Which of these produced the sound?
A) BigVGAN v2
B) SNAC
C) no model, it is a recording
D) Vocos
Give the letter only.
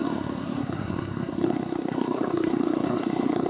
B